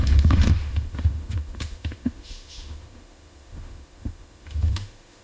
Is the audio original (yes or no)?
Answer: no